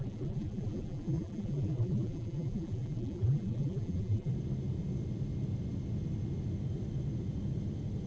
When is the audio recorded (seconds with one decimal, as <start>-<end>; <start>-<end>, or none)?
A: 4.3-8.1